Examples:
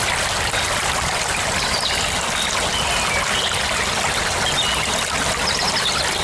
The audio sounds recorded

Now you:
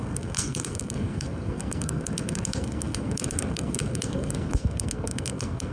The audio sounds remade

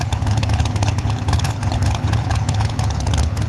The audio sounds remade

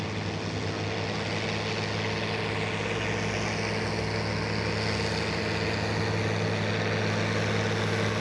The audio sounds recorded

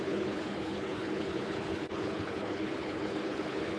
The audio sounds remade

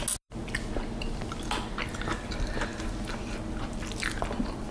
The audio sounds recorded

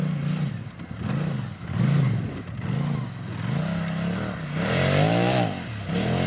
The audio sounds recorded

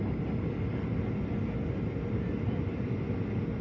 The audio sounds recorded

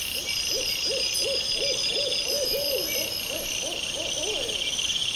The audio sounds recorded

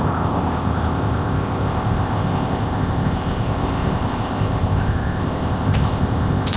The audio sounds remade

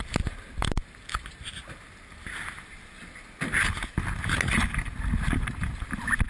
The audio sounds recorded